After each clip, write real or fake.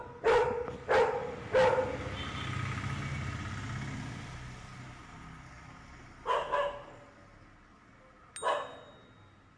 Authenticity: real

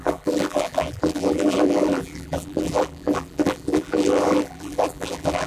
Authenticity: fake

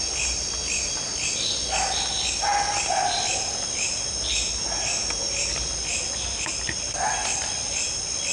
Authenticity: real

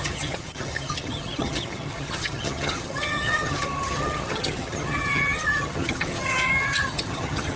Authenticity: fake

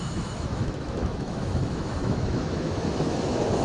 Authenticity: fake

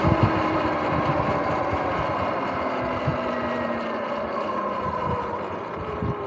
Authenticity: real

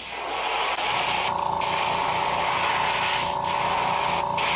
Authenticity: real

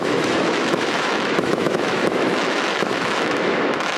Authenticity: fake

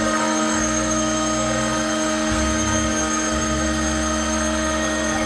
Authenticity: fake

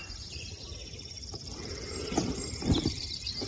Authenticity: fake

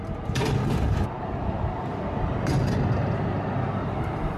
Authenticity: real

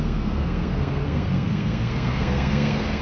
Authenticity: fake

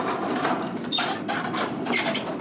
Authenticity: real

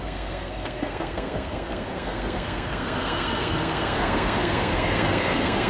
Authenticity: fake